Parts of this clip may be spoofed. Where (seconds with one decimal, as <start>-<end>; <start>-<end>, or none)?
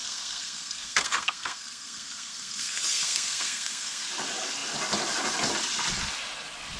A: 0.0-4.1